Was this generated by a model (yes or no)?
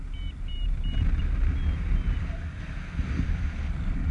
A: no